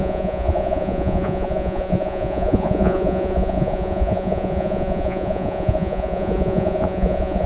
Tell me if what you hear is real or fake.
fake